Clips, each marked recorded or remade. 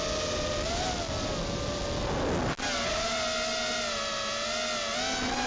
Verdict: recorded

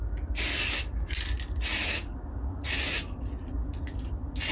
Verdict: recorded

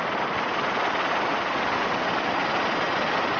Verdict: recorded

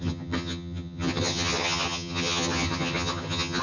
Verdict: remade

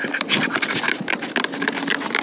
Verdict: recorded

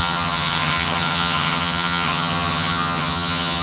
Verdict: remade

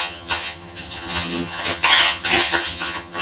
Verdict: remade